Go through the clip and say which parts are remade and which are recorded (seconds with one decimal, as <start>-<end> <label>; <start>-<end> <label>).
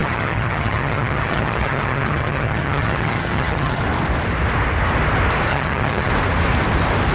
0.0-3.8 remade; 3.8-5.5 recorded; 5.5-6.1 remade; 6.1-7.1 recorded